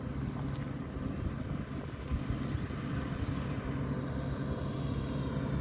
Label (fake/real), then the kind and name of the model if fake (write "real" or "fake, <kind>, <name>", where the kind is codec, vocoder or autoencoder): real